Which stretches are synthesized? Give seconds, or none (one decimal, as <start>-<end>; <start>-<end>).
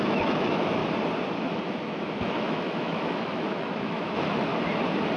0.0-0.8; 1.5-4.5